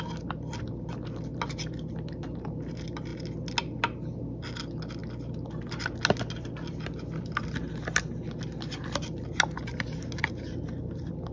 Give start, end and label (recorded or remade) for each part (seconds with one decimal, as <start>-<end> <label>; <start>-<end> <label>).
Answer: 0.0-11.3 recorded